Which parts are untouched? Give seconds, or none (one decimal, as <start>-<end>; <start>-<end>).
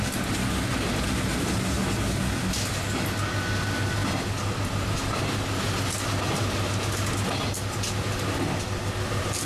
0.0-9.4